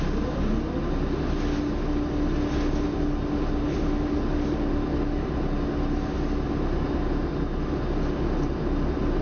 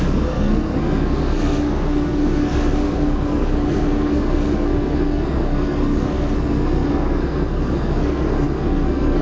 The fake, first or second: second